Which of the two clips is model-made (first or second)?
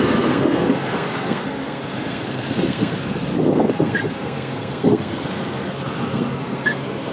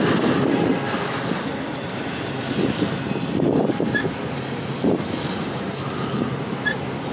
first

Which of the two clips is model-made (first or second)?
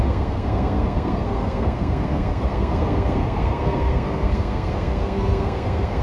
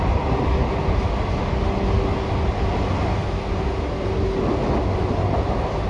first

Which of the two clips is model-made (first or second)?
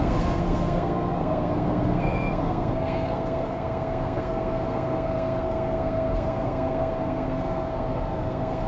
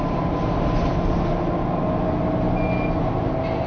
first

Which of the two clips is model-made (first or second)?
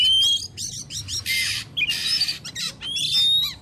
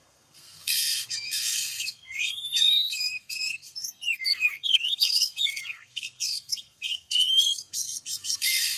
second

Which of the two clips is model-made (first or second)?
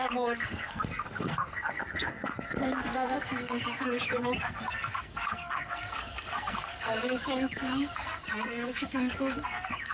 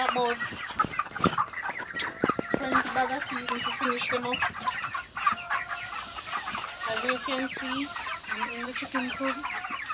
first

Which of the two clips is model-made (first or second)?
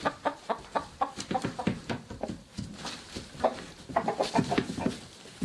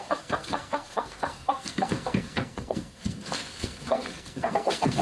second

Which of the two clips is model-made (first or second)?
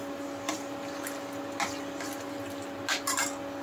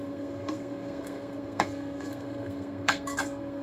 second